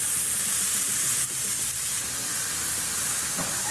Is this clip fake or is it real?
real